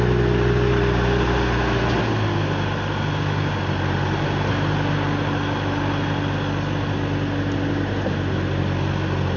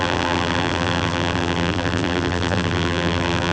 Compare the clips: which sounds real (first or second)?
first